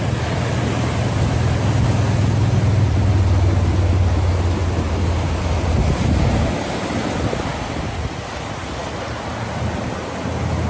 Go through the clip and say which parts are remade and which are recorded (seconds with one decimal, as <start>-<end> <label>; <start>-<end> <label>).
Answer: 0.0-7.5 recorded; 7.5-8.0 remade; 8.0-10.7 recorded